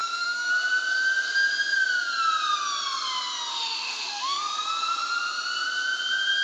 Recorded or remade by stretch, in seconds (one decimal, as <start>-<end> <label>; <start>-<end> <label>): 0.0-0.5 remade; 0.5-3.5 recorded; 3.5-4.4 remade; 4.4-6.4 recorded